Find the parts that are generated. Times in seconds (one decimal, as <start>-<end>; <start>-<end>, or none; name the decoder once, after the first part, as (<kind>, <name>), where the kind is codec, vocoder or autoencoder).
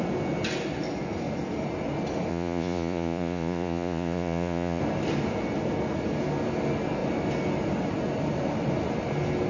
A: 2.3-4.8 (vocoder, Vocos)